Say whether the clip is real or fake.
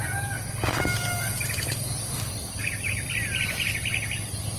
real